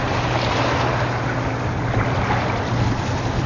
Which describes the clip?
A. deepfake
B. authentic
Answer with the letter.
B